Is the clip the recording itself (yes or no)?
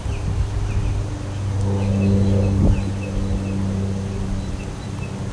yes